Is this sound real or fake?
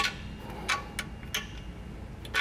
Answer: real